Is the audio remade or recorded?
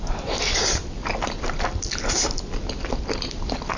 recorded